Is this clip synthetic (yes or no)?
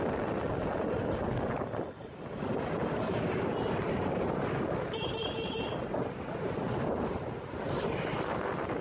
no